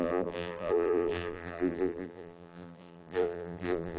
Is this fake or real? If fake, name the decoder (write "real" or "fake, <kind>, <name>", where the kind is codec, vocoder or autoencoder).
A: fake, vocoder, BigVGAN v2